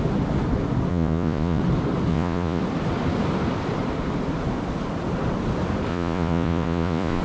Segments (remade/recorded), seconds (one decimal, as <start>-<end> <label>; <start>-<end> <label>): 0.0-0.9 recorded; 0.9-1.6 remade; 1.6-2.1 recorded; 2.1-2.6 remade; 2.6-5.9 recorded; 5.9-7.2 remade